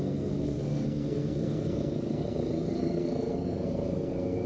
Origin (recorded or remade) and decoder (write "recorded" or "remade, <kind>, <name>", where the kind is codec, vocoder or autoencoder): remade, codec, SNAC